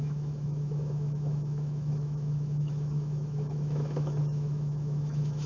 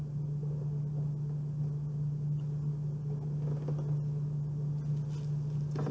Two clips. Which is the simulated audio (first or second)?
first